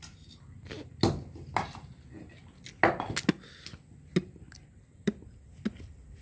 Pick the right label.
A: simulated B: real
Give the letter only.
B